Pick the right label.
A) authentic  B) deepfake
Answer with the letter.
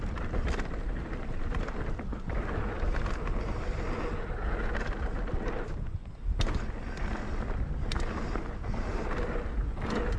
A